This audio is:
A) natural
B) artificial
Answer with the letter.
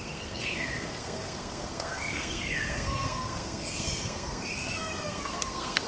B